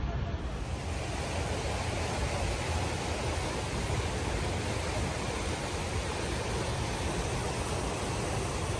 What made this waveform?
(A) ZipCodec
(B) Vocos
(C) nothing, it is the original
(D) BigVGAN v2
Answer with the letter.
C